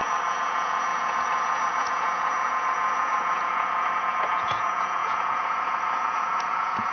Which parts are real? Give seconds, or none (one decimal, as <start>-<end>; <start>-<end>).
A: none